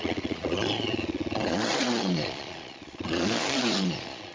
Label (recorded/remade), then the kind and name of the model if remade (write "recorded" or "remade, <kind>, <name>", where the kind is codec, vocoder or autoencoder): remade, vocoder, Vocos